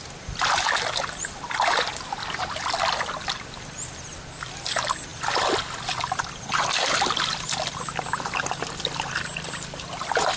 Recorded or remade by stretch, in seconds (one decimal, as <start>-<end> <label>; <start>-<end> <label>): 0.0-10.4 recorded